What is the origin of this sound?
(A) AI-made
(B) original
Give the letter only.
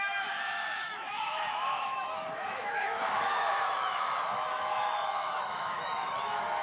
A